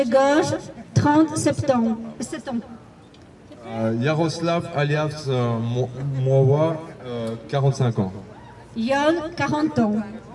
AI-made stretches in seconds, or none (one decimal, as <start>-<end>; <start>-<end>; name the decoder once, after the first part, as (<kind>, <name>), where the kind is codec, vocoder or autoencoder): none